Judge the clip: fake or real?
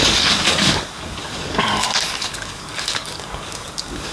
fake